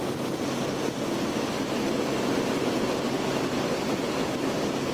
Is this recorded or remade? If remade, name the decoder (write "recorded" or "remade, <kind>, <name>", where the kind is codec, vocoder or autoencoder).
recorded